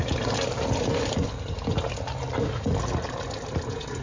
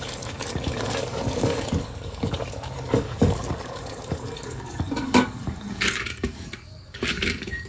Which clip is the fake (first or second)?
second